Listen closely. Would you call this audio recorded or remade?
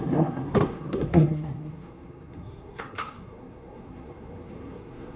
remade